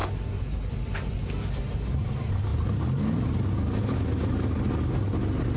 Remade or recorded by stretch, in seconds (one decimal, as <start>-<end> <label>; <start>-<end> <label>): 0.0-5.6 recorded